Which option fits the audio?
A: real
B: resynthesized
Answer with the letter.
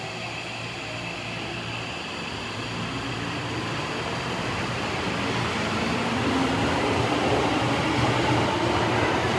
A